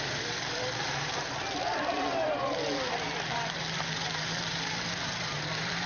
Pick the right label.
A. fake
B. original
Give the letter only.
A